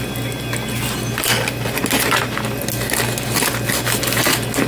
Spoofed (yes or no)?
no